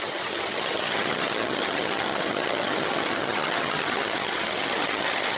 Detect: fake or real fake